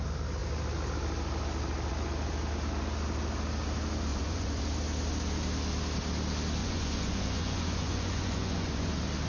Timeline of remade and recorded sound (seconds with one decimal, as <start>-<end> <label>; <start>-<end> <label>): 0.0-4.1 recorded; 4.1-4.6 remade; 4.6-6.6 recorded; 6.6-8.9 remade; 8.9-9.3 recorded